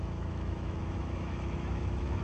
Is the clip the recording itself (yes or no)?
no